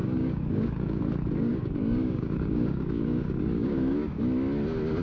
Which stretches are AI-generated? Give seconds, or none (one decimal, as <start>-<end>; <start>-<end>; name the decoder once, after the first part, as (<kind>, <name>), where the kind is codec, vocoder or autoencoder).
0.0-1.0 (codec, DAC); 1.5-4.2